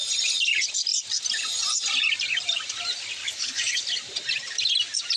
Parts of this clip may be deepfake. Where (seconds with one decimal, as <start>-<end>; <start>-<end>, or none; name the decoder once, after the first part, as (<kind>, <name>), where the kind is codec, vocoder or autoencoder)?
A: 3.2-3.8 (codec, DAC)